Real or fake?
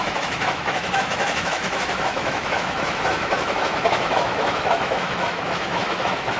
fake